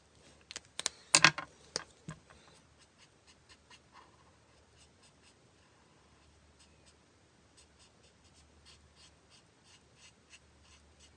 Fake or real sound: real